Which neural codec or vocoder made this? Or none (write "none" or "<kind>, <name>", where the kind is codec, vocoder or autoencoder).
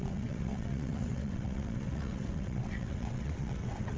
vocoder, WaveNeXt